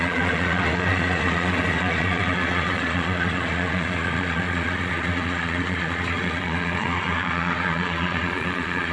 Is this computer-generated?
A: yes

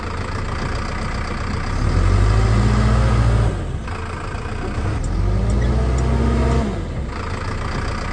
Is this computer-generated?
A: no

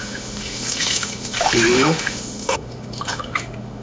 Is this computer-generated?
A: yes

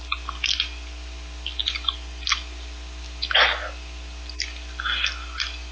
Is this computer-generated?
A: no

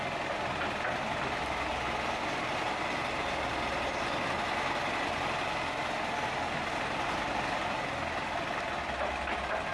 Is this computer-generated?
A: no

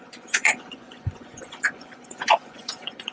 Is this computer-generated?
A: yes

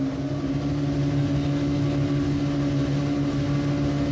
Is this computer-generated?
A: no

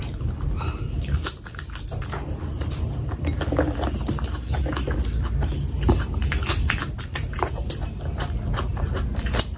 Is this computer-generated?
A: no